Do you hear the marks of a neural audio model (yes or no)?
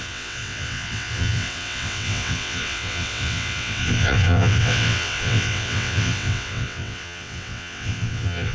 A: yes